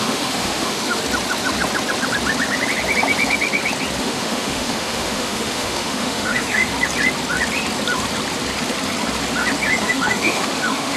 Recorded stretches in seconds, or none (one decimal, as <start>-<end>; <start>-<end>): 1.0-4.0; 6.7-9.8